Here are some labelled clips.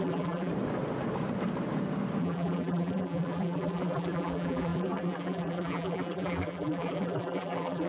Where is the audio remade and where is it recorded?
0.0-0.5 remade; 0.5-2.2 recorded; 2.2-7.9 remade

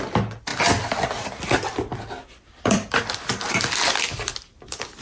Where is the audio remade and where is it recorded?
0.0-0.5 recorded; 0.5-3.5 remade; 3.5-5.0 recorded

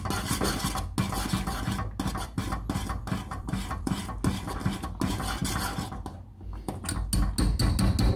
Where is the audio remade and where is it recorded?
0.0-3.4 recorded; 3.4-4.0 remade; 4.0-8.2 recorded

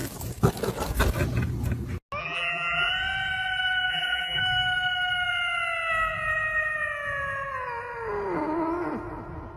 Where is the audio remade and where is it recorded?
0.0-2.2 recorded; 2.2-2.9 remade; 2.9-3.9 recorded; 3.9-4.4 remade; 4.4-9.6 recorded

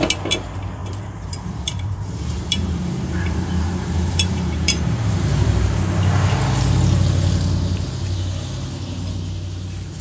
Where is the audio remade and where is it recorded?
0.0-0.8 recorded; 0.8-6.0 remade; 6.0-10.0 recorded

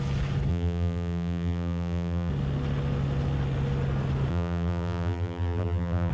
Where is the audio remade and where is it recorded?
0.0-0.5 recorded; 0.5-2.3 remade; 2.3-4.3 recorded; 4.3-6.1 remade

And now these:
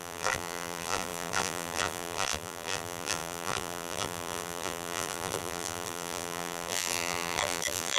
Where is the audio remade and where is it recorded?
0.0-8.0 remade

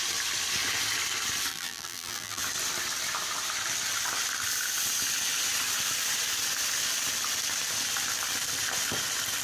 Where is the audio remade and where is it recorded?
0.0-1.5 recorded; 1.5-2.4 remade; 2.4-9.4 recorded